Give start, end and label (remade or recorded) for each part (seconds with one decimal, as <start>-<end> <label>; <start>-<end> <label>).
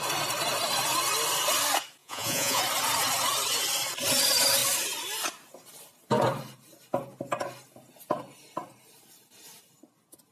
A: 0.0-2.0 recorded; 2.0-2.6 remade; 2.6-10.3 recorded